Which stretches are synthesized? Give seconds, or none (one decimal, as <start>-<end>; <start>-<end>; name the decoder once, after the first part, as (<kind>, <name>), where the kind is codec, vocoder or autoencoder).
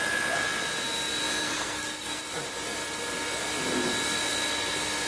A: 1.4-2.2 (codec, SNAC)